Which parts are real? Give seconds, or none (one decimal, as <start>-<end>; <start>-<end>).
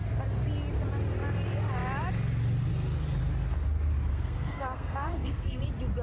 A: 0.0-4.1; 5.6-6.0